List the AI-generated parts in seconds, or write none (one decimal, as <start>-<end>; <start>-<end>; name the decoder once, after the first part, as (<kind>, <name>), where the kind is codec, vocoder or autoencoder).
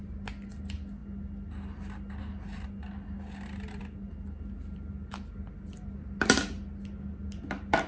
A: none